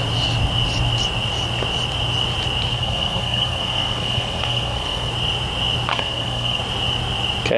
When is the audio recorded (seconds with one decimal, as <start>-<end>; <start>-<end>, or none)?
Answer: 0.0-2.7; 5.1-5.9; 6.6-7.6